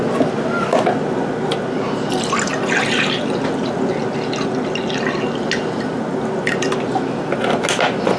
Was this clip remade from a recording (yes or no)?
no